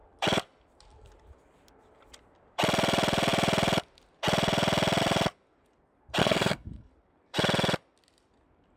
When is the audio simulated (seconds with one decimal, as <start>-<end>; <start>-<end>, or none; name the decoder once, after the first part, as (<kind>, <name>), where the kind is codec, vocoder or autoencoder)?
6.2-6.9 (codec, SNAC)